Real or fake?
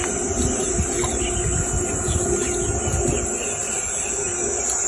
real